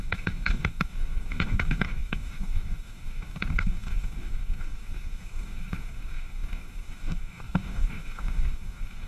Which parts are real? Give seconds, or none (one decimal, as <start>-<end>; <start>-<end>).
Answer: none